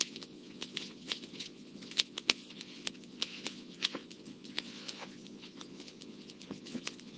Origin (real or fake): fake